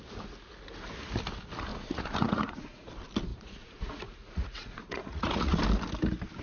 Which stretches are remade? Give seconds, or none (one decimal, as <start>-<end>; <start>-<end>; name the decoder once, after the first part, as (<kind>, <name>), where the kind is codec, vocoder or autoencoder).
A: 1.7-2.9 (vocoder, Vocos); 3.3-5.6